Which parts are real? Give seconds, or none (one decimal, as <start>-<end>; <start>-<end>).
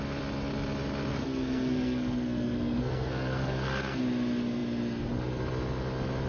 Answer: 0.0-1.1; 4.0-6.3